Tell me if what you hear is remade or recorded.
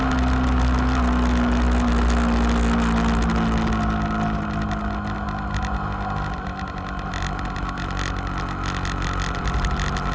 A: recorded